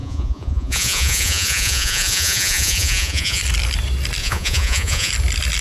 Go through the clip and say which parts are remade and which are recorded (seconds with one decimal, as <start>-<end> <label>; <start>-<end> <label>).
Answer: 0.0-3.4 remade; 3.4-4.2 recorded; 4.2-5.1 remade; 5.1-5.6 recorded